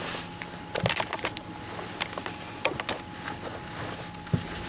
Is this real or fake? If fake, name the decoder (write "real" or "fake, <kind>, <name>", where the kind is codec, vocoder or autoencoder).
real